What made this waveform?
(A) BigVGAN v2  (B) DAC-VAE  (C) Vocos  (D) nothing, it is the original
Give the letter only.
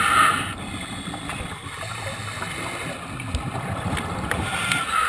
D